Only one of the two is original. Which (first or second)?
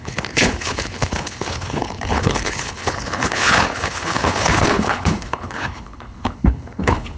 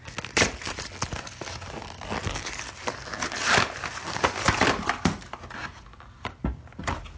second